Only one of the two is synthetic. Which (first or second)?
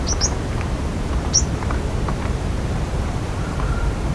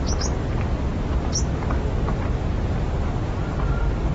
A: first